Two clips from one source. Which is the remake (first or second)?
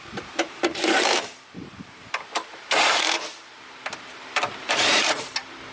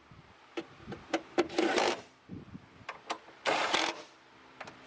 first